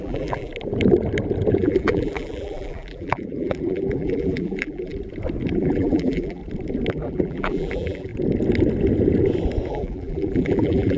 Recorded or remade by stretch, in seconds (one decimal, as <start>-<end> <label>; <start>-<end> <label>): 0.0-0.5 remade; 0.5-1.5 recorded; 1.5-4.9 remade; 4.9-5.6 recorded; 5.6-6.4 remade; 6.4-6.9 recorded; 6.9-8.1 remade; 8.1-9.7 recorded; 9.7-11.0 remade